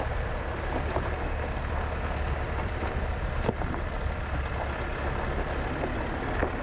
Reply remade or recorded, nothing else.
recorded